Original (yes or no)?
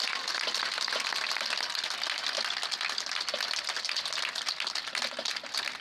yes